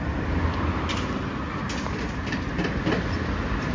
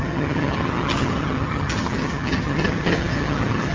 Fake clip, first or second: second